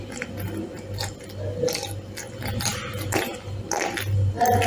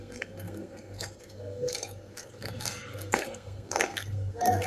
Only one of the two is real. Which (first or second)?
first